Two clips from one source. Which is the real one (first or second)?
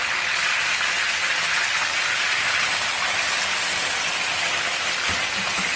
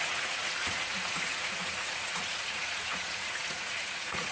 first